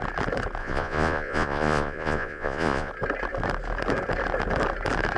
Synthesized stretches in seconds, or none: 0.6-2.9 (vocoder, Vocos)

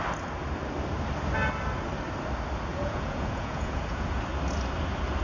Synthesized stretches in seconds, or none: 2.7-4.2 (vocoder, Vocos)

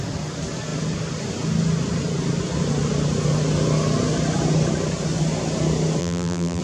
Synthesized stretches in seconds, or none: 6.0-6.6 (vocoder, BigVGAN v2)

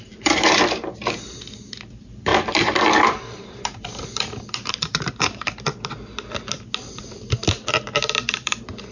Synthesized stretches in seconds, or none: 0.0-2.3 (vocoder, BigVGAN v2); 3.0-5.7; 7.7-8.9